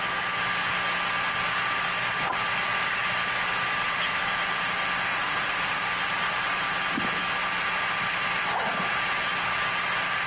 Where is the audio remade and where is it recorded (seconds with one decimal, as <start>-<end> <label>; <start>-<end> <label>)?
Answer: 0.0-5.1 recorded; 5.1-5.8 remade; 5.8-10.3 recorded